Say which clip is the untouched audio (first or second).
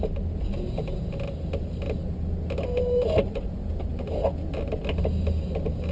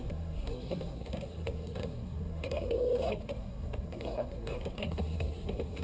first